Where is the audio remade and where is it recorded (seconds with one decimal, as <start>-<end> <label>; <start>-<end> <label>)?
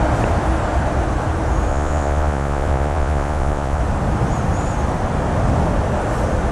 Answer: 0.0-1.7 recorded; 1.7-3.8 remade; 3.8-6.5 recorded